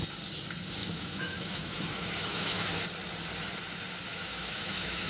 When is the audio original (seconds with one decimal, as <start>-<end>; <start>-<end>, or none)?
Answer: 0.0-0.8; 2.8-4.1